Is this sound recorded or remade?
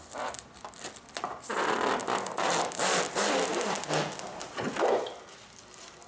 recorded